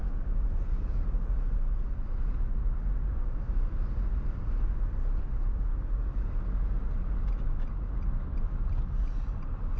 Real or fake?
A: real